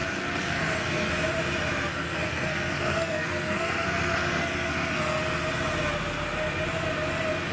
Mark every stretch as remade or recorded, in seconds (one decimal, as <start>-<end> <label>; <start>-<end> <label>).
0.0-1.1 remade; 1.1-1.9 recorded; 1.9-5.2 remade; 5.2-7.5 recorded